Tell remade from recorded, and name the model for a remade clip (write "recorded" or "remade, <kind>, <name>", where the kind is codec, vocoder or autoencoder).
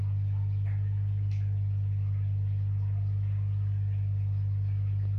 recorded